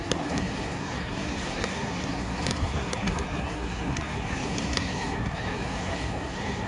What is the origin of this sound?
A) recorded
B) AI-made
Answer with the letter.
B